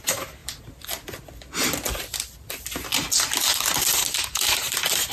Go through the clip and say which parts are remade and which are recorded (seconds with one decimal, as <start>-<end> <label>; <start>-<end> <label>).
0.0-3.5 recorded; 3.5-5.1 remade